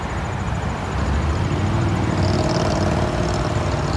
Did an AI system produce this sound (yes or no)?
no